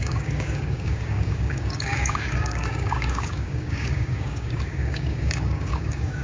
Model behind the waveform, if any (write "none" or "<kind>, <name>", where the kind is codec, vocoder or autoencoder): codec, DAC